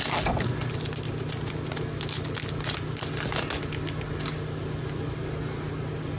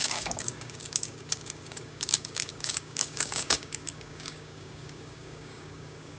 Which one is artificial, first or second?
second